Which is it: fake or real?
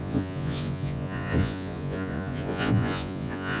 fake